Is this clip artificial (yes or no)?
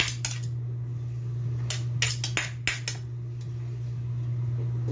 no